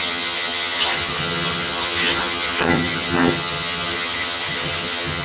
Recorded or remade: remade